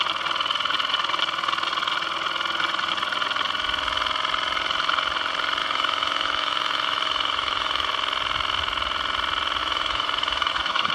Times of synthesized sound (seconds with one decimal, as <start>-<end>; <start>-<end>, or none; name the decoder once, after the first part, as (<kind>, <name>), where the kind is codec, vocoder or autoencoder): 5.6-7.9 (autoencoder, DAC-VAE); 9.6-10.9